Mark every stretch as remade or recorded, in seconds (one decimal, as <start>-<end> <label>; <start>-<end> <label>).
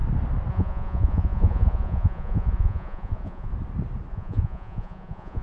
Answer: 0.0-0.5 recorded; 0.5-3.5 remade; 3.5-4.1 recorded; 4.1-5.4 remade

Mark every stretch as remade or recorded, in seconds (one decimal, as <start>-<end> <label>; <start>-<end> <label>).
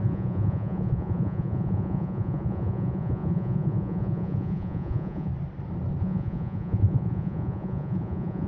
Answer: 0.0-5.3 remade; 5.3-6.0 recorded; 6.0-8.5 remade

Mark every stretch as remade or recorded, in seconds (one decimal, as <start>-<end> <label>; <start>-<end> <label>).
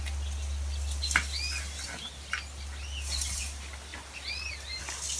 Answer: 0.0-5.2 recorded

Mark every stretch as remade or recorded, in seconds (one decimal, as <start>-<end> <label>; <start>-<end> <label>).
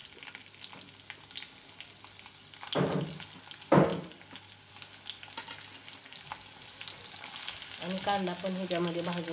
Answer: 0.0-9.3 recorded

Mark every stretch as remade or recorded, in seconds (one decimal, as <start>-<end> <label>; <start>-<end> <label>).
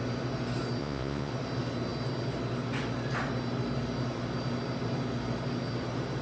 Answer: 0.0-0.8 recorded; 0.8-1.3 remade; 1.3-6.2 recorded